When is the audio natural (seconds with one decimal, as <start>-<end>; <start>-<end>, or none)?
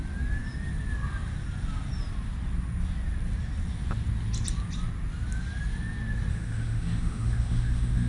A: 0.0-6.3